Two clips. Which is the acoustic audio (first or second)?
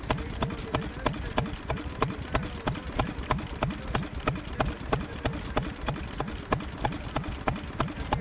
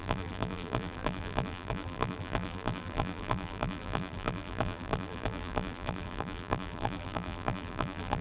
first